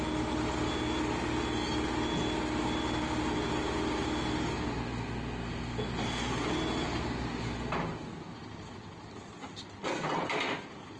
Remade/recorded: recorded